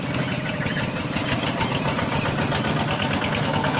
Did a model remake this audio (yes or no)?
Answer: no